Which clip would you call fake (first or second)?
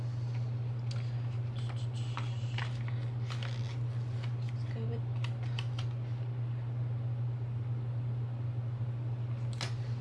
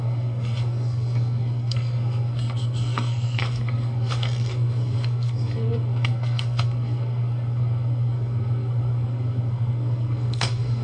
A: second